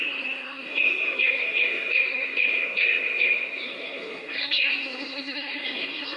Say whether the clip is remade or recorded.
remade